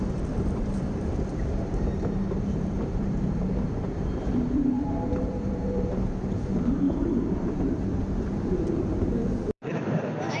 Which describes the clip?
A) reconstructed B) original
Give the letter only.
A